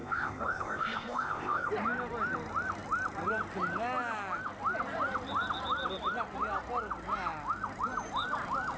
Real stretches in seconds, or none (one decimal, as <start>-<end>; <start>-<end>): 1.7-8.8